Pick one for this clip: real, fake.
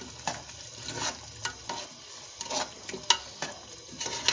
real